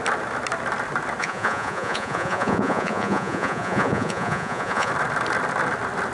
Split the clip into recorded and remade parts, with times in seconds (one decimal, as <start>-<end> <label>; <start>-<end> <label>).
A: 0.0-1.2 recorded; 1.2-4.9 remade; 4.9-6.1 recorded